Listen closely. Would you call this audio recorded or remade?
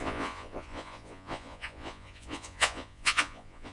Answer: remade